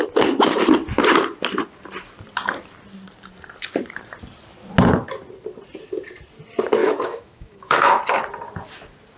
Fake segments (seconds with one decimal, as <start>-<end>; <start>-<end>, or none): 6.8-8.0

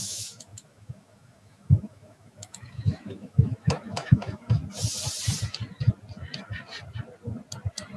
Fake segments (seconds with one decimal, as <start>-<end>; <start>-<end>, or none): 0.0-4.6

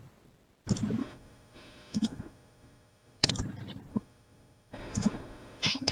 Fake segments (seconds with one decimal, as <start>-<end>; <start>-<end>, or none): 1.0-3.3; 3.9-5.9

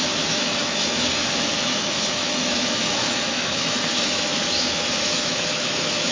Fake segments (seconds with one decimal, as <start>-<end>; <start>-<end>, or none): 0.0-6.1

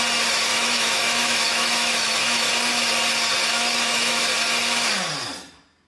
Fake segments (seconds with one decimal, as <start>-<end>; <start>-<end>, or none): 0.5-2.5; 3.5-4.2

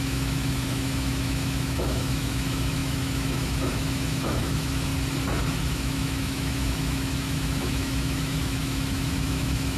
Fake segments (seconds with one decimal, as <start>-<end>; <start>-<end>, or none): 0.0-4.9; 5.7-9.8

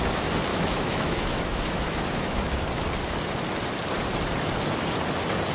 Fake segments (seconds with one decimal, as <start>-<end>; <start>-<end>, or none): 0.5-2.4

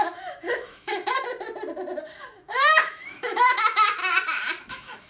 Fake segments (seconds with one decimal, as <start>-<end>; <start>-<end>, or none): 0.0-1.3; 2.0-4.0; 4.6-5.1